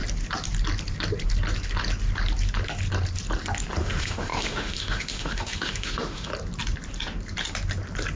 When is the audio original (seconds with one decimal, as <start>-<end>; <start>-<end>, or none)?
0.0-3.8; 6.3-8.2